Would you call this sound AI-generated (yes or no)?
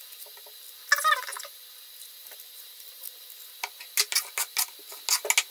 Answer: no